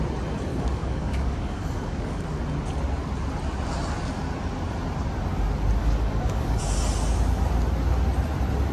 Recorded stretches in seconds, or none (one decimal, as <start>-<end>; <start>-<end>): 0.0-0.5; 2.4-5.8; 6.6-8.7